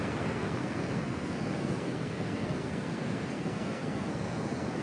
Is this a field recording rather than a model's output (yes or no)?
no